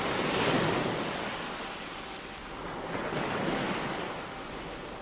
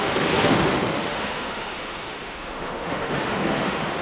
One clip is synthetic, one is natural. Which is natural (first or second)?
first